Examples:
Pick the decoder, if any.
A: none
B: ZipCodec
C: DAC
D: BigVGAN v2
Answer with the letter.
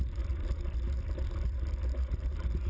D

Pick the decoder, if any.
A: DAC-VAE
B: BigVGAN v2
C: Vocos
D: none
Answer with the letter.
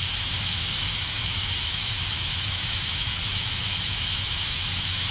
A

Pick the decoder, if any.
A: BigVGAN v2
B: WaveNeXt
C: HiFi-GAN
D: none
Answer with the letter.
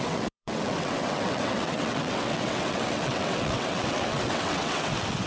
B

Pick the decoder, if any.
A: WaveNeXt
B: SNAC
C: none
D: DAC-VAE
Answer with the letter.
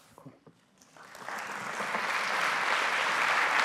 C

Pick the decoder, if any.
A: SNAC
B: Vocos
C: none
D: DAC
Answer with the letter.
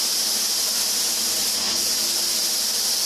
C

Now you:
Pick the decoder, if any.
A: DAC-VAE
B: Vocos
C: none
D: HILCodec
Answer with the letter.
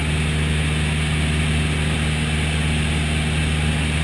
C